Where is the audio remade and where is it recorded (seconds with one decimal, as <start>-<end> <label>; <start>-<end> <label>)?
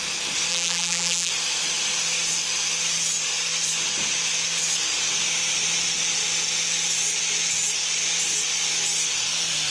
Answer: 0.0-0.5 recorded; 0.5-1.3 remade; 1.3-9.7 recorded